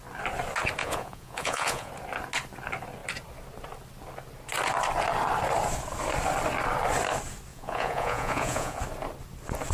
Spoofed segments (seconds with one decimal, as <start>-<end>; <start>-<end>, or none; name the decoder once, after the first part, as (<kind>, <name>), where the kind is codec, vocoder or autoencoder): 0.8-1.9 (vocoder, Vocos); 7.5-8.8